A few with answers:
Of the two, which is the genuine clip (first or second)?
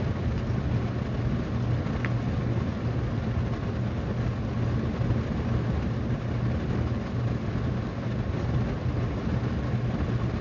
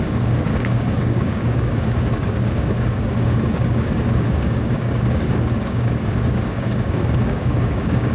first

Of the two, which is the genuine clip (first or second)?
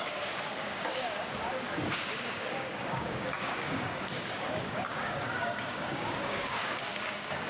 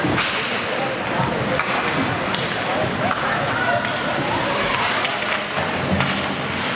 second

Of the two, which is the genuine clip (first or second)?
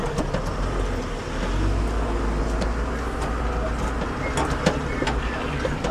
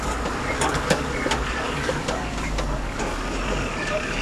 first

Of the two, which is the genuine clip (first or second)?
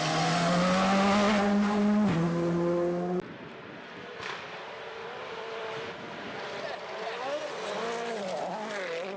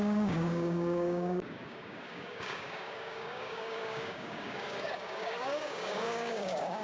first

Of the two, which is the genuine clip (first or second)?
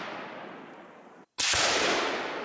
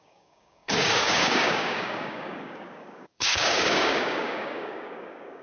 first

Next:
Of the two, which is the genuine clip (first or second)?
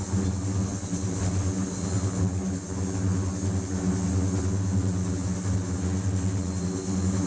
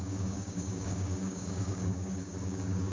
first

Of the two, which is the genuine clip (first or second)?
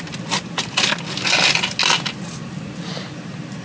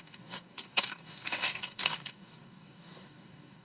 first